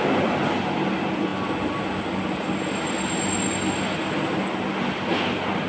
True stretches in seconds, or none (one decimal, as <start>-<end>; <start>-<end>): 0.0-5.7